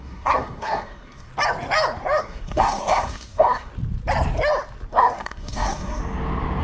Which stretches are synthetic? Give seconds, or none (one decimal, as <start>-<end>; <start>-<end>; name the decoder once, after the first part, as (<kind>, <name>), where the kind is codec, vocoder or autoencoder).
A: 0.0-1.3 (codec, SNAC); 2.2-3.7; 4.9-6.0